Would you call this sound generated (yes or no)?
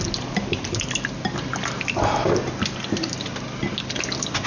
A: no